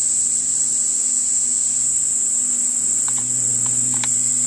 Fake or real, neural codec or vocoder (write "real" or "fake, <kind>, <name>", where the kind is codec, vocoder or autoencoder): real